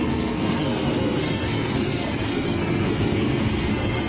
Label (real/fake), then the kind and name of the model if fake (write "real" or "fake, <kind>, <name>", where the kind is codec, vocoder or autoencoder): fake, codec, SNAC